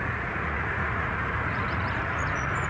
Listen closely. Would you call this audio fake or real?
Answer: fake